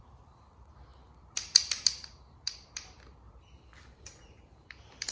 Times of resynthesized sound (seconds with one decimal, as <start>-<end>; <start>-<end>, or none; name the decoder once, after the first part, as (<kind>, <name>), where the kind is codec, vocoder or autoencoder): none